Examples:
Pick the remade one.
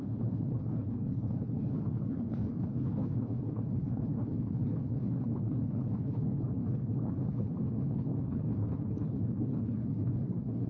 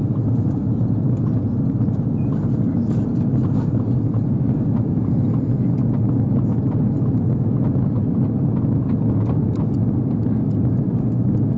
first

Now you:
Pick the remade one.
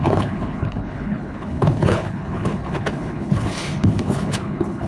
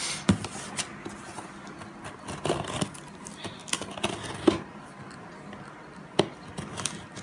first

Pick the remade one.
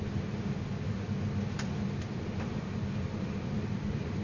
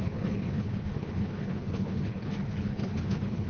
second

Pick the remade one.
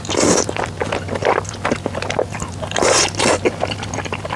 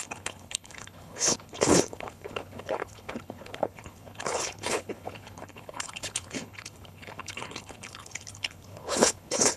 second